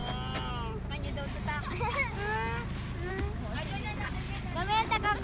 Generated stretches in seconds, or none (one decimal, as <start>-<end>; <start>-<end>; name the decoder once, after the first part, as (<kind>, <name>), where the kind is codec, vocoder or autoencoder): none